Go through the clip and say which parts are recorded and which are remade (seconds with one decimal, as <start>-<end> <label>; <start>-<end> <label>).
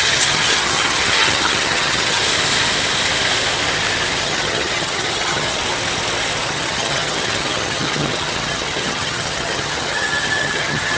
0.0-2.2 remade; 2.2-4.2 recorded; 4.2-5.6 remade; 5.6-6.4 recorded; 6.4-11.0 remade